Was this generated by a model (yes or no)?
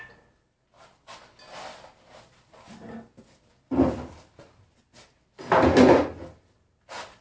no